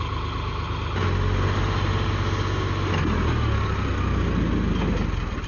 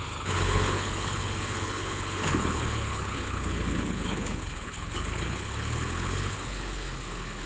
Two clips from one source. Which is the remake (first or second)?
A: second